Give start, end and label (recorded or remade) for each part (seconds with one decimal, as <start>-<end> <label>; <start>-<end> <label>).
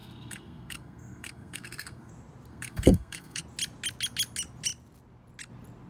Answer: 0.0-2.1 remade; 2.1-2.5 recorded; 2.5-3.4 remade; 3.4-5.9 recorded